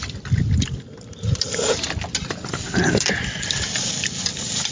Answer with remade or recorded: recorded